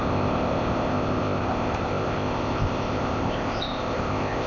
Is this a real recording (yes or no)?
no